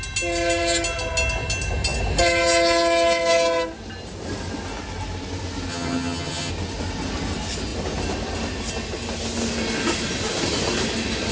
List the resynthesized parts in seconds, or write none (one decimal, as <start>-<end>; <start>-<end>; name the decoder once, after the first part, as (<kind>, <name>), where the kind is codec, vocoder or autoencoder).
5.7-6.5 (vocoder, HiFi-GAN)